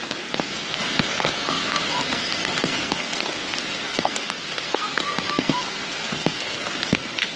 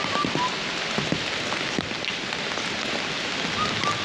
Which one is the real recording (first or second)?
second